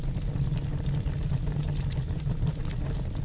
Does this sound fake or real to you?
real